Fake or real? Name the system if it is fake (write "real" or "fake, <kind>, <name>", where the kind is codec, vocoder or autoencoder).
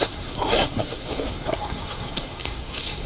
fake, codec, SNAC